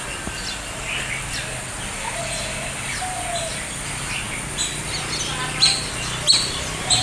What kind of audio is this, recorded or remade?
recorded